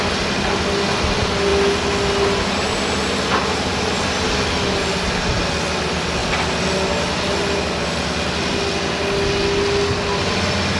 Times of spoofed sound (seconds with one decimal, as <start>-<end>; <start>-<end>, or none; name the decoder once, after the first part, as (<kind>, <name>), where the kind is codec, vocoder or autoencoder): none

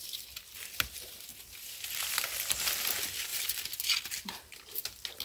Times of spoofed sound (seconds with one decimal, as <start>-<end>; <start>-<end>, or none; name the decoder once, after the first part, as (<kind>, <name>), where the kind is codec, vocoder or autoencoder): none

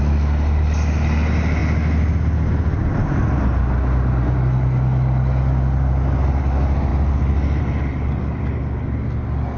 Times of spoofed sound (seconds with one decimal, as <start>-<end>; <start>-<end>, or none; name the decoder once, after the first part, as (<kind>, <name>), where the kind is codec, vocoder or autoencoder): none

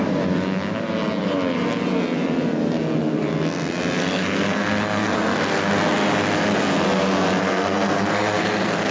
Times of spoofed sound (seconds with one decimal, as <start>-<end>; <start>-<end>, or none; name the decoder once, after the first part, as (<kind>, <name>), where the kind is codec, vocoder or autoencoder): 4.0-5.7 (codec, SNAC); 7.4-8.9

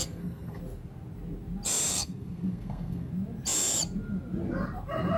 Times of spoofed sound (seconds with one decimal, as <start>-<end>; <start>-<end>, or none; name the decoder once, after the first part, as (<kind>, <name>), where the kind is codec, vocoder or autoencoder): 0.0-0.6 (codec, SNAC); 1.9-3.1

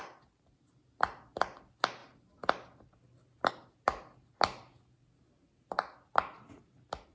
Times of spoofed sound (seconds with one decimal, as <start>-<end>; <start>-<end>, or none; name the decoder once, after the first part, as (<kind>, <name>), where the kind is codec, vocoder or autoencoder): none

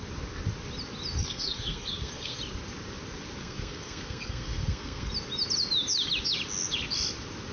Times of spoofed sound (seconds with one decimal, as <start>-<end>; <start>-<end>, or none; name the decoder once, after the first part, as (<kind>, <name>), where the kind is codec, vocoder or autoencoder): 1.2-2.4 (codec, SNAC); 3.4-5.1